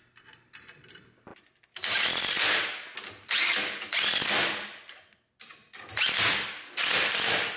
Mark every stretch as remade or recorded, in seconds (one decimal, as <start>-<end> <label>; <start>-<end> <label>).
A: 0.0-7.6 recorded